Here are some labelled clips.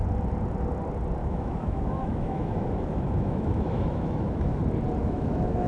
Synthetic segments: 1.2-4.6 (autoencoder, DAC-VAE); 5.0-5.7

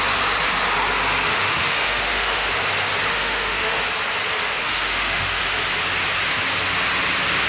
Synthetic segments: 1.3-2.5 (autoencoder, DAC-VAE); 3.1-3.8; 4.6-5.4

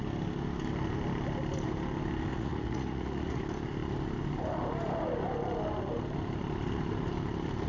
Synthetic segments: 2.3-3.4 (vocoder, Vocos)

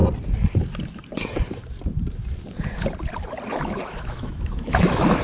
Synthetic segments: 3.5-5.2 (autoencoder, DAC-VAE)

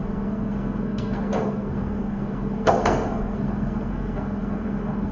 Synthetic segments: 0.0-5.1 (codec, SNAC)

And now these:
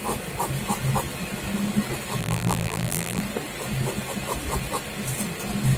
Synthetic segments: 2.2-3.2 (vocoder, BigVGAN v2)

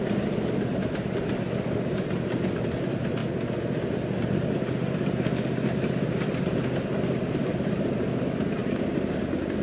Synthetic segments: none